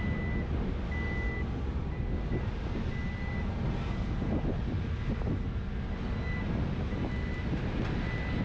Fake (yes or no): no